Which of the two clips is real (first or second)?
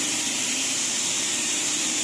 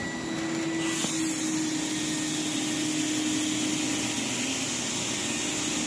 second